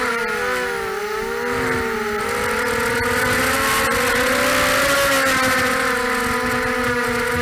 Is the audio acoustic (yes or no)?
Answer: yes